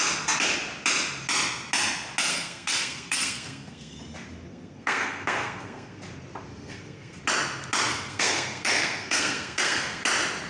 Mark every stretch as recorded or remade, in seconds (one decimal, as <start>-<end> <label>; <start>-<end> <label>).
0.0-2.3 recorded; 2.3-4.0 remade; 4.0-4.5 recorded; 4.5-6.0 remade; 6.0-6.5 recorded; 6.5-7.2 remade; 7.2-7.9 recorded; 7.9-10.0 remade; 10.0-10.5 recorded